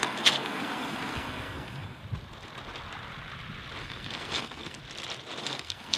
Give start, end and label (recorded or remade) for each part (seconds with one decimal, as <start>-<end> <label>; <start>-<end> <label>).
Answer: 0.0-2.0 remade; 2.0-3.8 recorded; 3.8-4.8 remade; 4.8-5.4 recorded; 5.4-6.0 remade

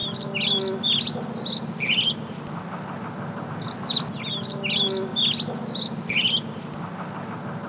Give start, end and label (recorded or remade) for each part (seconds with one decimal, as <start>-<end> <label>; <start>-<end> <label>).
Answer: 0.0-7.7 recorded

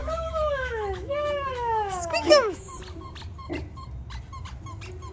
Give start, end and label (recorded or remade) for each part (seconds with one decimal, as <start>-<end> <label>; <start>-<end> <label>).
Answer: 0.0-2.7 remade; 2.7-5.1 recorded

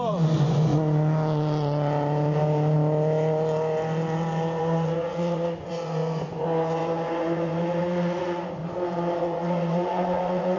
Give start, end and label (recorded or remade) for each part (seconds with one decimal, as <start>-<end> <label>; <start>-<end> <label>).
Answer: 0.0-0.7 remade; 0.7-4.6 recorded; 4.6-8.6 remade; 8.6-9.2 recorded; 9.2-10.6 remade

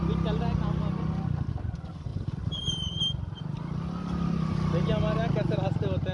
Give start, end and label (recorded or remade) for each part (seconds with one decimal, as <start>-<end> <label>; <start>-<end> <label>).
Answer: 0.0-2.1 recorded; 2.1-3.0 remade; 3.0-6.1 recorded

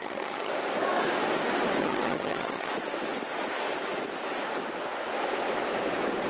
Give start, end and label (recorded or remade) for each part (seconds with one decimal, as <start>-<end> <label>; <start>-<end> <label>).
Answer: 0.0-0.5 remade; 0.5-1.8 recorded; 1.8-2.7 remade; 2.7-6.3 recorded

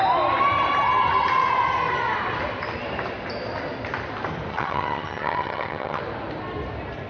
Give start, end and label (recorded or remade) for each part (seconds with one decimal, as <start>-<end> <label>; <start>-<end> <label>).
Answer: 0.0-4.5 recorded; 4.5-6.0 remade; 6.0-7.1 recorded

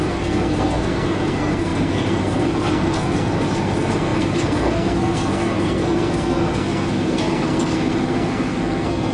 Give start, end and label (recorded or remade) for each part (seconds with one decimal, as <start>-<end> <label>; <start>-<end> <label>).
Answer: 0.0-9.1 remade